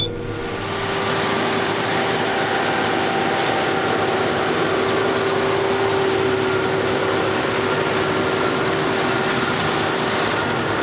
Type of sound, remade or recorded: recorded